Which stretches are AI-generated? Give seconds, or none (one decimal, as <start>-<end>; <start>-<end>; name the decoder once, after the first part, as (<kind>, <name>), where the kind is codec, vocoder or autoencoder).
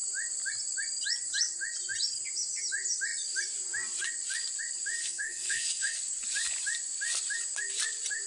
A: 5.0-6.0 (codec, SNAC)